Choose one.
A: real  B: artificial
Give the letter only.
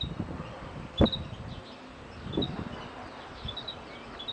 A